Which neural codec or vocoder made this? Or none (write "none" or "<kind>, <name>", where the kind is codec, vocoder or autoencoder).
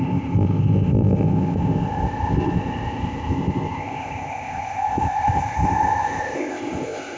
codec, ZipCodec